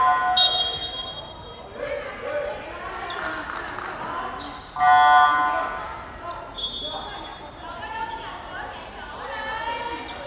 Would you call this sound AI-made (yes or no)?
no